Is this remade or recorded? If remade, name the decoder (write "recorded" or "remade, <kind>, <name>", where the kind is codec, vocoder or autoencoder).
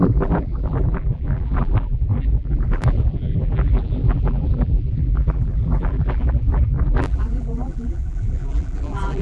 remade, vocoder, BigVGAN v2